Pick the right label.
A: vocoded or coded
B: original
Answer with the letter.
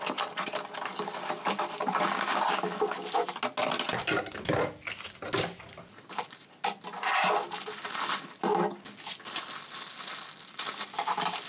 B